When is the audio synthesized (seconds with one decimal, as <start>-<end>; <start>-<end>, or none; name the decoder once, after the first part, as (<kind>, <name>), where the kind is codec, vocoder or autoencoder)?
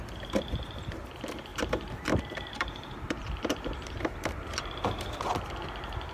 1.5-5.2 (vocoder, BigVGAN v2)